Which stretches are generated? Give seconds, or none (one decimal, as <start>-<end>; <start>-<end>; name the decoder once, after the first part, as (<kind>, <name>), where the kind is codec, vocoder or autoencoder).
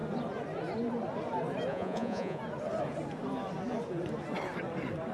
1.7-2.4 (vocoder, Vocos)